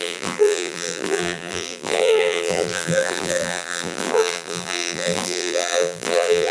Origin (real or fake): fake